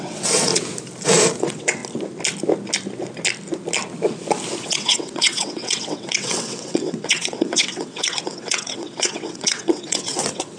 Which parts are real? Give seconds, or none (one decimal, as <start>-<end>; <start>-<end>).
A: 0.5-1.4; 1.8-4.6